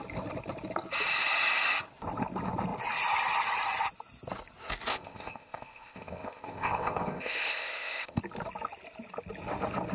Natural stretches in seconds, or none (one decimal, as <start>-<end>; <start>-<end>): 0.0-4.9; 8.2-9.9